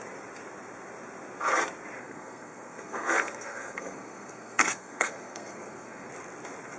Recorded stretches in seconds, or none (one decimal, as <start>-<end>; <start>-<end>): 0.0-2.0; 6.1-6.8